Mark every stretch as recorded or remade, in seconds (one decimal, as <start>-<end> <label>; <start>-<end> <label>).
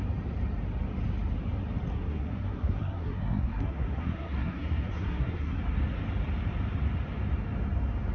0.0-1.9 recorded; 1.9-5.6 remade; 5.6-8.1 recorded